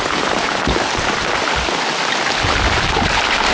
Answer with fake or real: real